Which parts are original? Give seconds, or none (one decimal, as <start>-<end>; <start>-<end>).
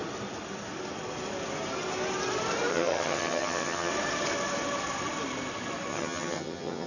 0.0-2.7; 3.9-5.9